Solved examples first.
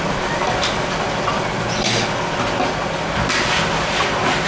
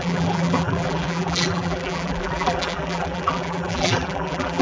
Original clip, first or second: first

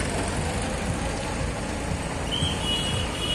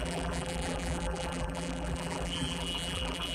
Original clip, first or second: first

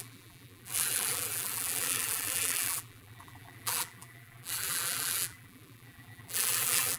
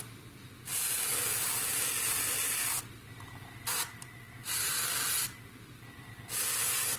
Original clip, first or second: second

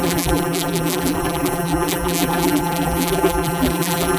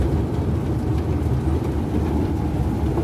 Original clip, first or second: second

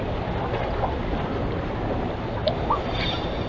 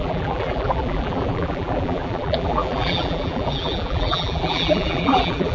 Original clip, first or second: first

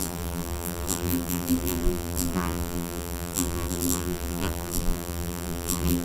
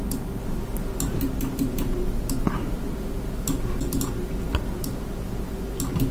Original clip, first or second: second